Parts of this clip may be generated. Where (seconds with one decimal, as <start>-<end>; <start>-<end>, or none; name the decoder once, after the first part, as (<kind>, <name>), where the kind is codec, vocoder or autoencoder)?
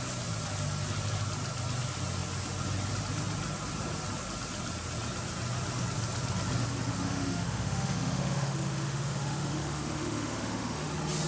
6.9-10.9 (autoencoder, DAC-VAE)